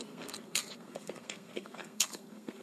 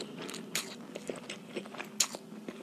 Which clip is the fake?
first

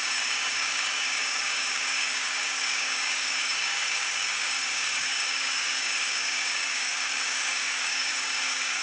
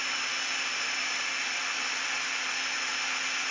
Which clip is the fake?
first